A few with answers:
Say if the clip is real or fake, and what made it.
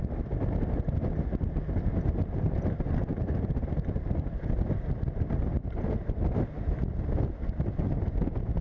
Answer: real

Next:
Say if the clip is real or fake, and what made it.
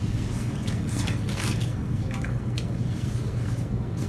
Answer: fake, codec, SNAC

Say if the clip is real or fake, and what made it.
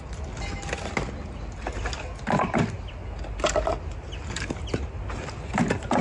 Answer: real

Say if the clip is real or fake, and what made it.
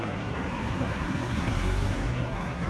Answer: fake, codec, SNAC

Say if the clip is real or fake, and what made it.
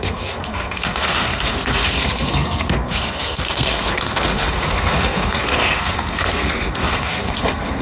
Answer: fake, codec, SNAC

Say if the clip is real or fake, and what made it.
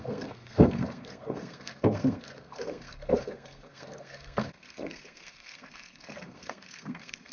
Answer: fake, codec, SNAC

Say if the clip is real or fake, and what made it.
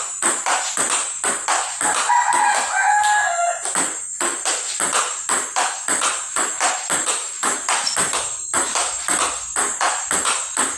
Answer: real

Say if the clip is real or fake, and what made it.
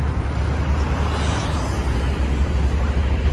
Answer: real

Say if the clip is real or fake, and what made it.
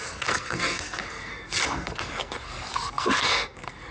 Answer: fake, codec, SNAC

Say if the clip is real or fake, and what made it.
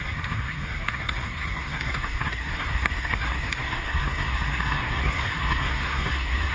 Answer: fake, codec, SNAC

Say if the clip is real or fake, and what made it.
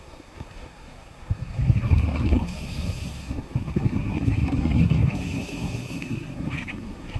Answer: fake, codec, SNAC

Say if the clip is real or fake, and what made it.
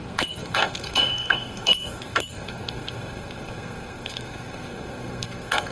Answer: fake, codec, SNAC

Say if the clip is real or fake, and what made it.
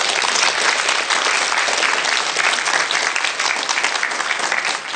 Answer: real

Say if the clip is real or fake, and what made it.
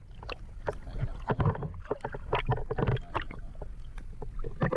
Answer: real